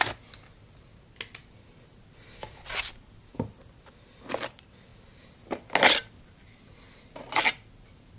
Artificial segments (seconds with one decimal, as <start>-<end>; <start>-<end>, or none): none